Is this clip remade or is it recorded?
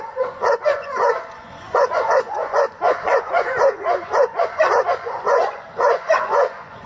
remade